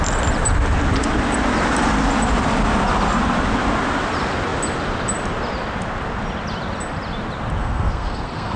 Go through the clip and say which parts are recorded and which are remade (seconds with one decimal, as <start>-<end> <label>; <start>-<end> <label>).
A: 0.0-7.6 recorded; 7.6-8.6 remade